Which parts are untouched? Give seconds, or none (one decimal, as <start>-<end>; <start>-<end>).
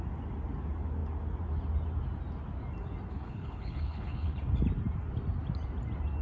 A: 0.0-3.1; 4.4-6.2